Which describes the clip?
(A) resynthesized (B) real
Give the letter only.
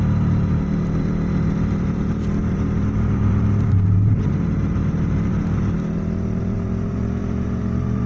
A